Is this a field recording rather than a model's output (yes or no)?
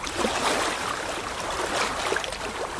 yes